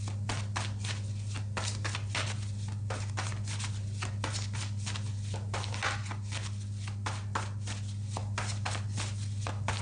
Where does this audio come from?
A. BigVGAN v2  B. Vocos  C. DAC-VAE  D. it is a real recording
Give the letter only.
D